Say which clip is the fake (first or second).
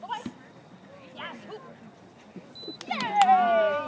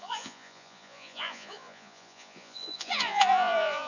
second